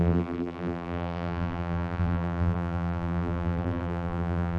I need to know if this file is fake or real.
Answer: fake